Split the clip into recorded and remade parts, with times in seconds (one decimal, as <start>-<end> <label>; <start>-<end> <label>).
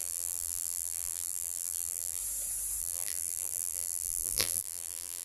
0.0-2.2 remade; 2.2-2.8 recorded; 2.8-5.2 remade